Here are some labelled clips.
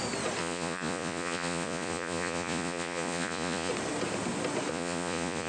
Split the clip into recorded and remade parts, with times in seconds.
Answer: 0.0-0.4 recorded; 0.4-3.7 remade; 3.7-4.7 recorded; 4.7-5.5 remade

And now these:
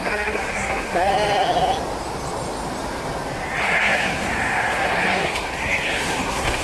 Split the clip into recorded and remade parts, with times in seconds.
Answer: 0.0-1.1 remade; 1.1-3.6 recorded; 3.6-6.6 remade

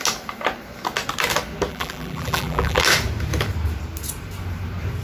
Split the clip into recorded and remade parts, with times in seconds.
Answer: 0.0-1.7 recorded; 1.7-2.8 remade; 2.8-5.0 recorded

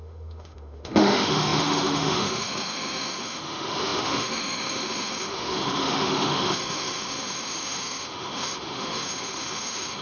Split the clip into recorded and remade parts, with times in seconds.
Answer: 0.0-10.0 remade

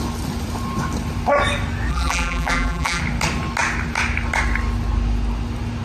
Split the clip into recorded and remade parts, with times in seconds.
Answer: 0.0-1.9 recorded; 1.9-3.0 remade; 3.0-5.8 recorded

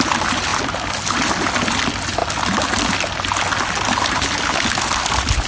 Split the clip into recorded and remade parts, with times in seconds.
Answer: 0.0-5.5 recorded